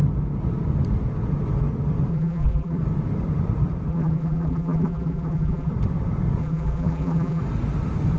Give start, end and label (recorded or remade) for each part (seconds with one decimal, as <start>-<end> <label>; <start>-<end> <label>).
0.0-2.1 recorded; 2.1-2.8 remade; 2.8-3.9 recorded; 3.9-5.7 remade; 5.7-6.4 recorded; 6.4-7.4 remade; 7.4-8.2 recorded